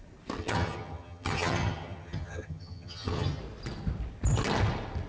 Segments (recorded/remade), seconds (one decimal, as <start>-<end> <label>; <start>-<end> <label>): 0.0-0.4 recorded; 0.4-3.4 remade; 3.4-5.1 recorded